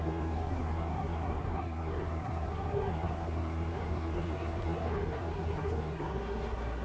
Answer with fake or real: fake